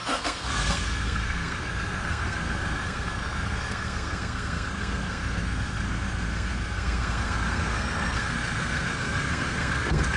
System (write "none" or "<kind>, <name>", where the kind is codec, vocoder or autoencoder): codec, SNAC